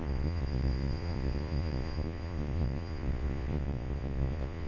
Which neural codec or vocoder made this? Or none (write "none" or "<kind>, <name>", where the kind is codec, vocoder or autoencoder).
vocoder, Vocos